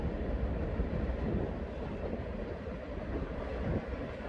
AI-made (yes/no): yes